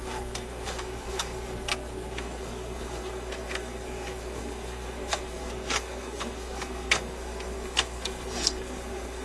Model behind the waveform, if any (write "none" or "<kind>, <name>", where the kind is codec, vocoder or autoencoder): codec, SNAC